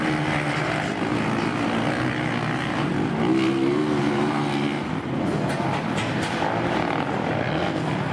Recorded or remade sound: recorded